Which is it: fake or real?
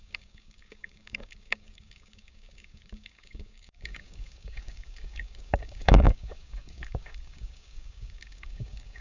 fake